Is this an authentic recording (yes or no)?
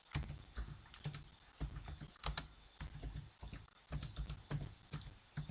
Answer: yes